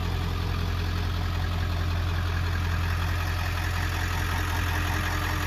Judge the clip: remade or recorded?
recorded